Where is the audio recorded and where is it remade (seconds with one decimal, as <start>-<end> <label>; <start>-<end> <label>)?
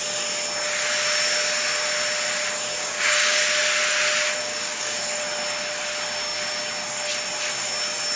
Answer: 0.0-2.8 recorded; 2.8-3.4 remade; 3.4-4.4 recorded; 4.4-5.0 remade; 5.0-8.2 recorded